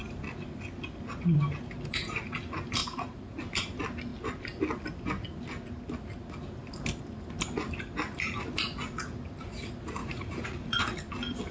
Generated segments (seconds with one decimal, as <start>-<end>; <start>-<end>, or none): 2.8-3.4; 10.0-10.8